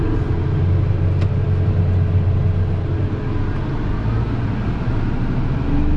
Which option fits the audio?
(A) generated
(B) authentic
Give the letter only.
B